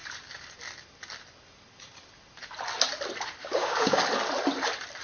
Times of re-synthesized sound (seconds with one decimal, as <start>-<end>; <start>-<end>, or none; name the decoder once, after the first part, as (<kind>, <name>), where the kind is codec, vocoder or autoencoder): 3.4-4.0 (codec, DAC)